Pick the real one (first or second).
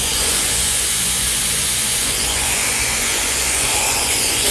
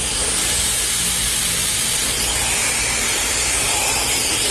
second